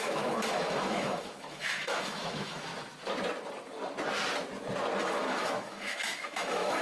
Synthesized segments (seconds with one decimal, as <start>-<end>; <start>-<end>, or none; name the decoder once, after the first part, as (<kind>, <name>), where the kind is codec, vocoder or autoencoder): 0.0-2.7 (autoencoder, DAC-VAE); 5.0-6.8